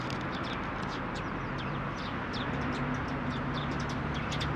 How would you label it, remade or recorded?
remade